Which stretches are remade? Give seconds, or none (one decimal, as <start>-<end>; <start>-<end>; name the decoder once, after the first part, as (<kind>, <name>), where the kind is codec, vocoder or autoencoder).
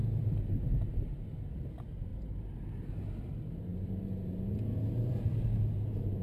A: none